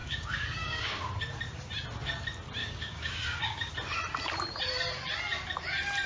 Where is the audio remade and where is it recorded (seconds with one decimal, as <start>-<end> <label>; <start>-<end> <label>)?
0.0-1.1 remade; 1.1-2.6 recorded; 2.6-3.7 remade; 3.7-6.1 recorded